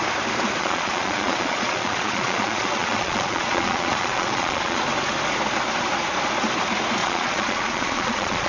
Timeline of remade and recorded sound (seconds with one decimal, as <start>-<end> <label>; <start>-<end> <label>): 0.0-0.6 recorded; 0.6-4.8 remade; 4.8-7.0 recorded; 7.0-8.5 remade